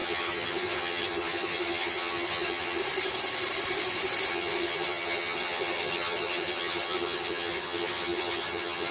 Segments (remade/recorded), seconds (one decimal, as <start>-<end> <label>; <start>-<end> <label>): 0.0-2.8 remade; 2.8-4.3 recorded; 4.3-8.9 remade

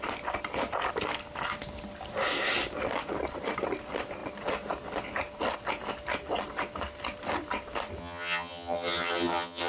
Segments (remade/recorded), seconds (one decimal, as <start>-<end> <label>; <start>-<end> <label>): 0.0-8.0 recorded; 8.0-9.7 remade

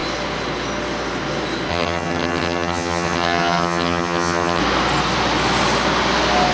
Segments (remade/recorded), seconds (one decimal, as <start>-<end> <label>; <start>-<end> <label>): 0.0-1.7 recorded; 1.7-4.6 remade; 4.6-6.5 recorded

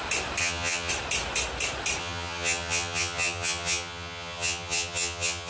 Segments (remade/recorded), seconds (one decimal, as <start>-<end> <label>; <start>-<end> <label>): 0.0-0.4 recorded; 0.4-0.9 remade; 0.9-2.0 recorded; 2.0-5.5 remade

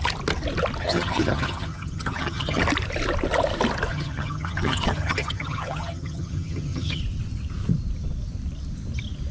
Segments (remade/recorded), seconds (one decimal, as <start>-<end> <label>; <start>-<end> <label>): 0.0-0.8 recorded; 0.8-2.6 remade; 2.6-3.9 recorded; 3.9-7.0 remade; 7.0-9.3 recorded

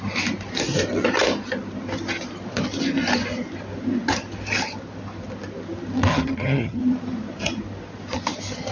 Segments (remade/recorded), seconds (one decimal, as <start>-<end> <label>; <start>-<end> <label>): 0.0-6.1 recorded; 6.1-6.8 remade; 6.8-8.7 recorded

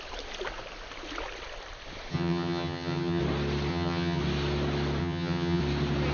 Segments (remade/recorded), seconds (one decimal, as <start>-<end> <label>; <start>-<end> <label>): 0.0-2.1 recorded; 2.1-3.2 remade; 3.2-3.7 recorded; 3.7-4.2 remade; 4.2-5.0 recorded; 5.0-5.6 remade; 5.6-6.1 recorded